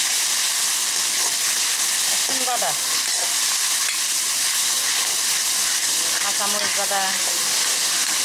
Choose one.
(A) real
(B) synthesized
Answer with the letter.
A